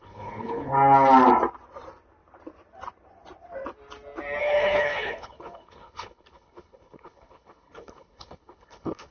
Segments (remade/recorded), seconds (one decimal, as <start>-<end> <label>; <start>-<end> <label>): 0.0-0.7 remade; 0.7-4.4 recorded; 4.4-9.1 remade